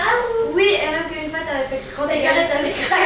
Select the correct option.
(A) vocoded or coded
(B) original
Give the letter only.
B